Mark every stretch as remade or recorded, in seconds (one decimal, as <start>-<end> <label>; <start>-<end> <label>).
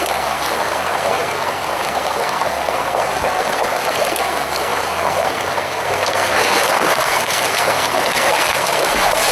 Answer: 0.0-9.3 remade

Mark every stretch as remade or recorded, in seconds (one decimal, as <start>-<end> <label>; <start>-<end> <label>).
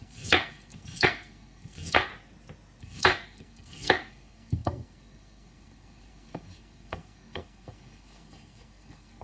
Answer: 0.0-2.1 remade; 2.1-2.8 recorded; 2.8-9.2 remade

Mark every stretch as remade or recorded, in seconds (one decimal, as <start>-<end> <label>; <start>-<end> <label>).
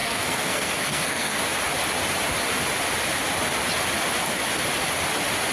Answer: 0.0-1.4 remade; 1.4-5.5 recorded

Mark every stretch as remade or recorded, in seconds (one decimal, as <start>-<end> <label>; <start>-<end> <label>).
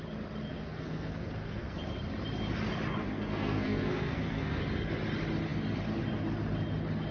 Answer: 0.0-0.5 recorded; 0.5-1.8 remade; 1.8-3.0 recorded; 3.0-4.6 remade; 4.6-7.1 recorded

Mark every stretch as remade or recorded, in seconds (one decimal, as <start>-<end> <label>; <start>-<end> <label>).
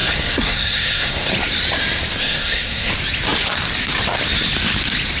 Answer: 0.0-1.3 remade; 1.3-2.2 recorded; 2.2-2.9 remade; 2.9-5.2 recorded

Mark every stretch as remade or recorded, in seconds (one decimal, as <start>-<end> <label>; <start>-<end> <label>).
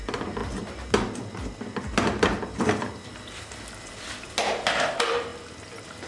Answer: 0.0-6.1 recorded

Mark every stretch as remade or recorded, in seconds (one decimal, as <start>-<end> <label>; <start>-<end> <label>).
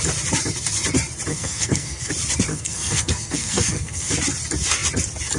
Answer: 0.0-1.3 recorded; 1.3-2.1 remade; 2.1-2.5 recorded; 2.5-4.1 remade; 4.1-5.4 recorded